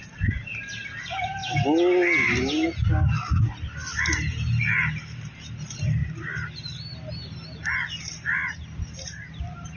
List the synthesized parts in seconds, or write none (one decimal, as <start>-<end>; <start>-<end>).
0.0-1.4; 4.0-6.0; 7.6-9.8